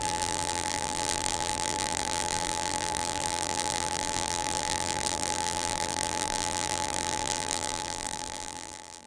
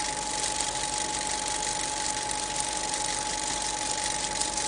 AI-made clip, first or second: first